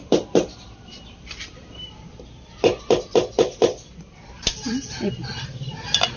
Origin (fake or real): fake